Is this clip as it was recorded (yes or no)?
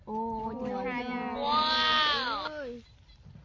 yes